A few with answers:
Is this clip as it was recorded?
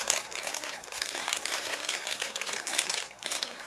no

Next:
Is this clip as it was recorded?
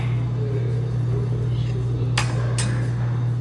yes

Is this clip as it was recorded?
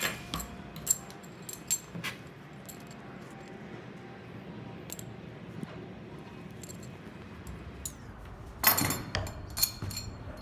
yes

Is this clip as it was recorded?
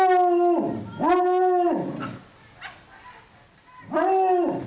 yes